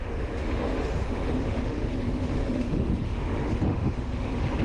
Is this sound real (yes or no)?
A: no